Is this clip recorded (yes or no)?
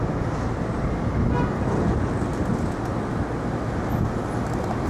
yes